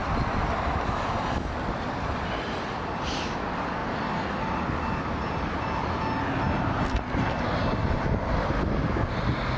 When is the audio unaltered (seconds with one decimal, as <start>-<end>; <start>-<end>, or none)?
3.2-9.6